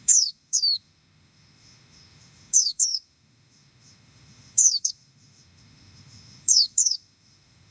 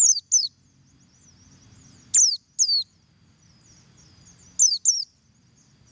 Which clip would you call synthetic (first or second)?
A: first